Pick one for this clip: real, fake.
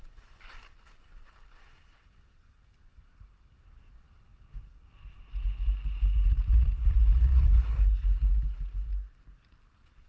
real